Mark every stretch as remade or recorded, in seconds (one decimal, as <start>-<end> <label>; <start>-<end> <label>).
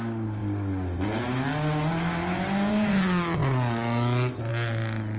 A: 0.0-5.2 recorded